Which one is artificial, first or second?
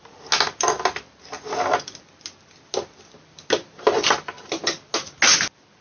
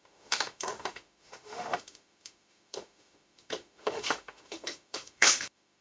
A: second